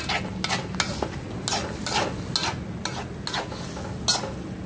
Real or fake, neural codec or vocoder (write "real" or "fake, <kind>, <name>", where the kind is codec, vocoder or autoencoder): real